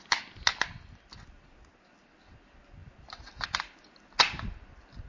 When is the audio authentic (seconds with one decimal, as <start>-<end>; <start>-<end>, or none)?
0.0-5.1

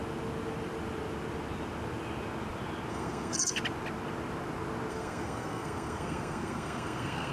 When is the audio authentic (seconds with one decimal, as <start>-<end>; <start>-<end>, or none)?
0.0-2.9; 3.6-4.9

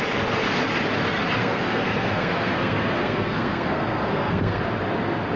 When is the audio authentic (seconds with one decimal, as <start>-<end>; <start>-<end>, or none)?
0.0-1.4; 4.6-5.4

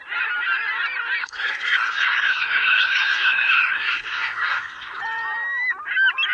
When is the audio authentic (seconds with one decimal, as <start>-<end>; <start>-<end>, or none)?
0.0-1.2; 5.0-6.3

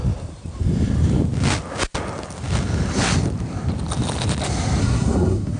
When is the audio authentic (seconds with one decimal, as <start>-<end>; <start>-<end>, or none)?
0.0-4.8

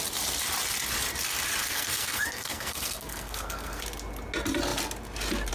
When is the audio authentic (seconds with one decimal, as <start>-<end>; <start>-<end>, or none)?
0.0-1.6; 3.8-5.5